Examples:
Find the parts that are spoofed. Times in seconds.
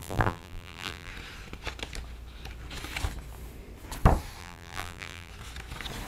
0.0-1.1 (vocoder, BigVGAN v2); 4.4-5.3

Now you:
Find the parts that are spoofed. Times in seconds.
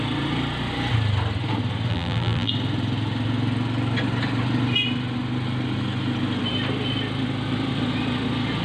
1.9-2.5 (vocoder, BigVGAN v2)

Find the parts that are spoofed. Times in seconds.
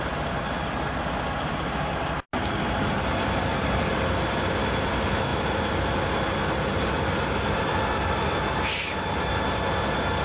none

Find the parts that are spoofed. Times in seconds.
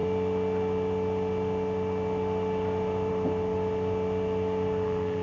none